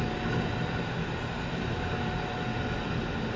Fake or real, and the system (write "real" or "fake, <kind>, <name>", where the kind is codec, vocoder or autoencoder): real